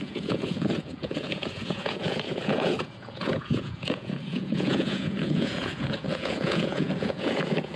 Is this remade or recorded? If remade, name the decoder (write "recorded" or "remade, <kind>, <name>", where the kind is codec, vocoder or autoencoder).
remade, vocoder, Vocos